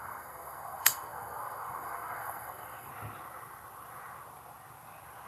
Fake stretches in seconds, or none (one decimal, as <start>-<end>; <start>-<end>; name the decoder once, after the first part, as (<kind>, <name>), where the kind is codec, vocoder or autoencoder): 0.0-2.9 (codec, SNAC)